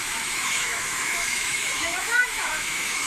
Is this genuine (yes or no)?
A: no